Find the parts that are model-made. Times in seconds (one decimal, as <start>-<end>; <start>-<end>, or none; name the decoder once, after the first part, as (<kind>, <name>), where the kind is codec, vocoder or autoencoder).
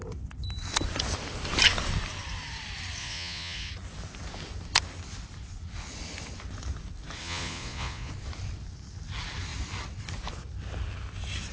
3.0-3.7 (vocoder, Vocos); 7.2-8.1